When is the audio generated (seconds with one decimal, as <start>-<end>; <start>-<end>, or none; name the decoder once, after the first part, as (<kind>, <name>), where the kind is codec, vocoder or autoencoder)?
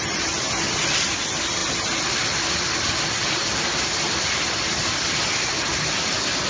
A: none